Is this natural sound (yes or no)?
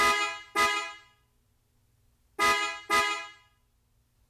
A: yes